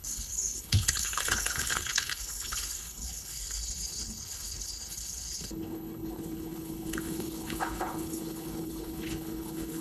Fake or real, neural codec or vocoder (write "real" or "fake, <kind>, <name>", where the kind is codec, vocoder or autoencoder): fake, codec, HILCodec